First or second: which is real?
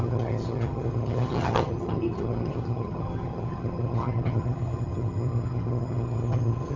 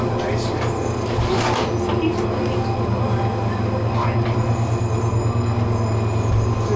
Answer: second